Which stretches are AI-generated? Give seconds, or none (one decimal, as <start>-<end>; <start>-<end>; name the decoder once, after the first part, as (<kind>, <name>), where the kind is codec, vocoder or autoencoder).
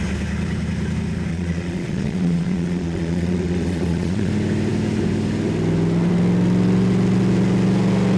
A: 1.3-4.3 (vocoder, Vocos)